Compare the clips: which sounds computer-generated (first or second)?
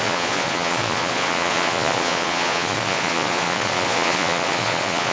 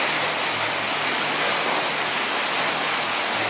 first